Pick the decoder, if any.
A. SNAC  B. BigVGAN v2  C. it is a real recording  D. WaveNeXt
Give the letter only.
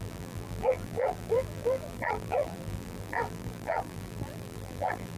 B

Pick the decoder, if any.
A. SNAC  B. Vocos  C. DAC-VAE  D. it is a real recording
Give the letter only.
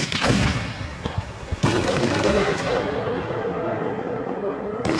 A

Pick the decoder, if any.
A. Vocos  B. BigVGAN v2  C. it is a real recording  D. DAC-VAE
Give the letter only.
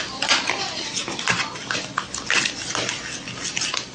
C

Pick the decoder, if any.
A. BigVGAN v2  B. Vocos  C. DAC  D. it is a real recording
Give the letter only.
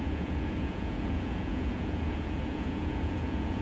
B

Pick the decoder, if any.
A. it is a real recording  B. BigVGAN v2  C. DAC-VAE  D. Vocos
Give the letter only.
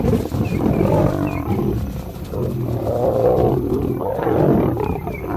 B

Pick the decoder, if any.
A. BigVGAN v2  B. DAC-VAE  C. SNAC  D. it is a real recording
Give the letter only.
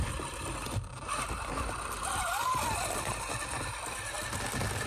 D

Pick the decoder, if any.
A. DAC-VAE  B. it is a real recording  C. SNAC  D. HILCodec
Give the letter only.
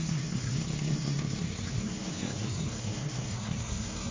C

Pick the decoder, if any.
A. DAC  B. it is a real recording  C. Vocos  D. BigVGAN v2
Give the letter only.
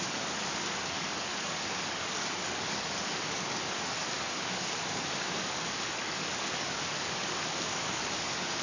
A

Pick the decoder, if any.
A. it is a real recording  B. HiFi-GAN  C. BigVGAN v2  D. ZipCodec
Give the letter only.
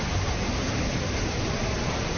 C